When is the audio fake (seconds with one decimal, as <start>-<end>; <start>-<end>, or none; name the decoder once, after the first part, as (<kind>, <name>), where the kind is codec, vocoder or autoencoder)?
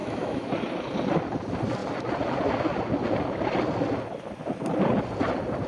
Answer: 0.0-0.5 (autoencoder, DAC-VAE)